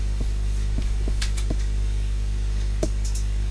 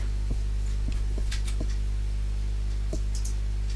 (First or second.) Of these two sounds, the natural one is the second